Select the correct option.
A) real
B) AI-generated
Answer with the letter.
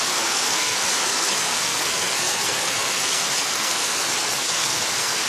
B